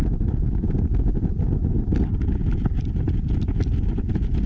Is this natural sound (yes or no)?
yes